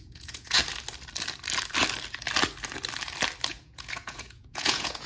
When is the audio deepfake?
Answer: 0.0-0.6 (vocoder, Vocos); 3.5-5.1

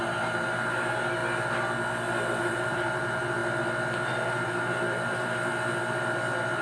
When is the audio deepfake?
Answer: 0.0-1.2 (vocoder, BigVGAN v2); 2.4-3.4; 4.1-5.5

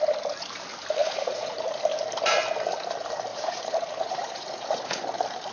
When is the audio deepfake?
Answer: 1.0-1.8 (vocoder, Vocos); 3.3-5.0

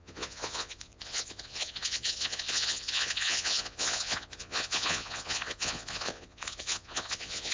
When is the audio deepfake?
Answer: 0.0-7.5 (vocoder, Vocos)

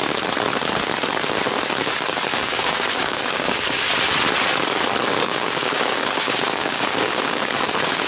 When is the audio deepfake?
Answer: 2.4-3.9 (codec, DAC); 5.2-8.1

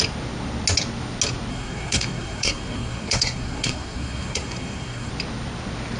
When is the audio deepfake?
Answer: 1.5-5.1 (codec, SNAC)

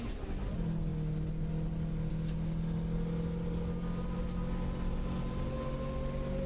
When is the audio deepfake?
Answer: none

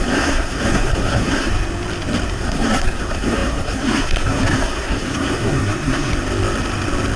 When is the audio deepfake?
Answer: 0.0-1.5 (codec, SNAC); 2.3-6.1